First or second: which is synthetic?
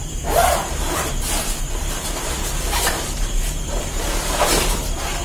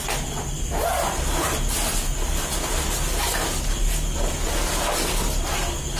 first